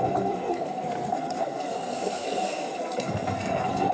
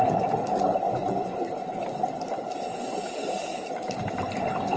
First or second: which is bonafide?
second